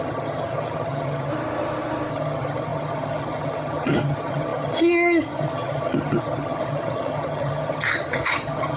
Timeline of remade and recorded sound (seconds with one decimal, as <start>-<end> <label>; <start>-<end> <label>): 0.0-1.3 remade; 1.3-2.1 recorded; 2.1-8.8 remade